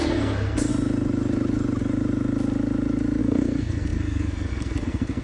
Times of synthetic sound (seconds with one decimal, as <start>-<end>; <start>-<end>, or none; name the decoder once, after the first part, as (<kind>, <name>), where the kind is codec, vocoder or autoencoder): 0.0-0.7 (codec, SNAC); 3.2-5.2